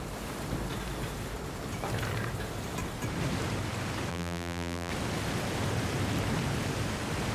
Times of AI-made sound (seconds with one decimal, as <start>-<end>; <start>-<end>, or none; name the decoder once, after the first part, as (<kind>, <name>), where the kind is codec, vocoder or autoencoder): 4.1-4.9 (vocoder, BigVGAN v2)